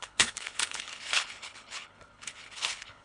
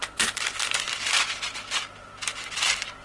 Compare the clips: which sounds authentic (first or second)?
second